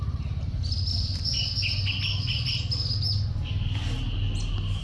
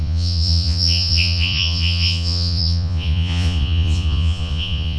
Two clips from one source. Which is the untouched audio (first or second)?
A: first